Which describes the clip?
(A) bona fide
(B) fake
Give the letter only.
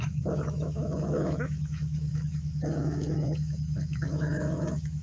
B